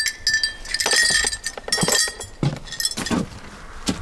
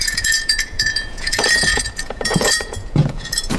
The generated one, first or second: second